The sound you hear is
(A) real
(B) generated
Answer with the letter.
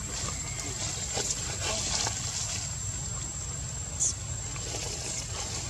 A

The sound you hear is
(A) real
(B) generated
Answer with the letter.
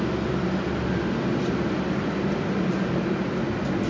A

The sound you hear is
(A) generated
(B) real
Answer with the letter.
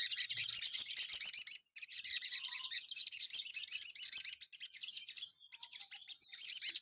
B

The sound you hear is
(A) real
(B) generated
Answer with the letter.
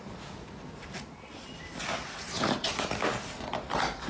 A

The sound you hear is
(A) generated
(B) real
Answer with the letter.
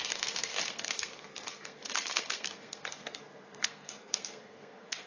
A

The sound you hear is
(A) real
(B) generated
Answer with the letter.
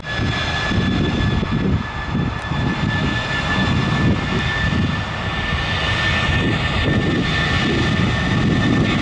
A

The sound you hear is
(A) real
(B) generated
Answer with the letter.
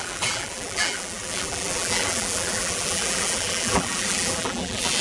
B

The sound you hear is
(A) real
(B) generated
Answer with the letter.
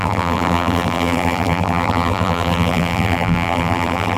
B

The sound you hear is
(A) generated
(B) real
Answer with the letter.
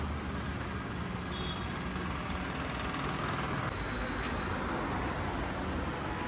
B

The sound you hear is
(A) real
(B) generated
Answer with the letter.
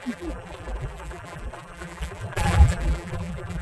B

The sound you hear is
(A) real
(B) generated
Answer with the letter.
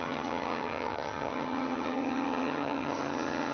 B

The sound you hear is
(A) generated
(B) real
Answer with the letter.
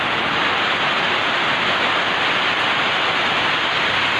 B